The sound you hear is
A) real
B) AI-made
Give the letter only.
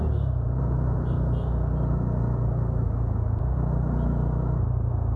A